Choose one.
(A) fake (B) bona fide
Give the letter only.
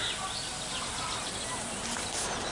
B